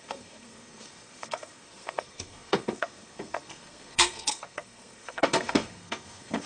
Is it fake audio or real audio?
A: fake